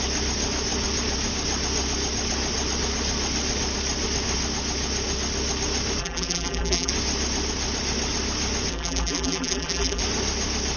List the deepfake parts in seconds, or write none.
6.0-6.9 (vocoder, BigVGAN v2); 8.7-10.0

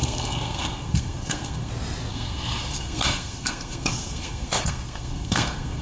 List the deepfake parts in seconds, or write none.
0.0-1.7 (codec, SNAC); 2.1-5.8

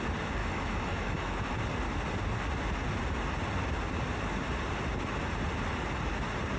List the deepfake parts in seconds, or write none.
0.4-1.5 (autoencoder, DAC-VAE)

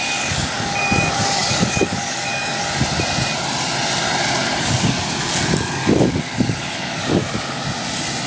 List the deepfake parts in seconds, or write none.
0.0-2.6 (codec, DAC); 4.5-7.6

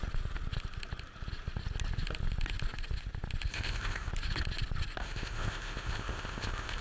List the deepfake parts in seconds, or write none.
3.5-4.1 (codec, ZipCodec); 5.0-6.8

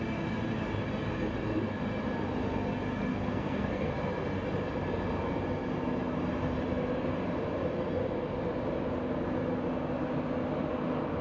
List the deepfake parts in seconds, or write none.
3.1-3.9 (codec, SNAC)

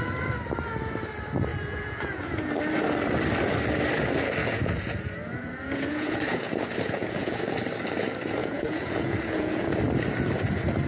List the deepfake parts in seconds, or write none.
1.5-2.5 (vocoder, Vocos); 4.4-7.4; 8.4-9.8